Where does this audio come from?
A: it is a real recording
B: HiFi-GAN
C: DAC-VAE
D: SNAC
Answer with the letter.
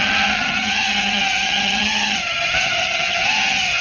B